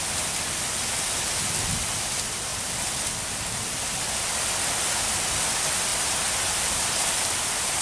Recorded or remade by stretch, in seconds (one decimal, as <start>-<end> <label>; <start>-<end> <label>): 0.0-7.8 recorded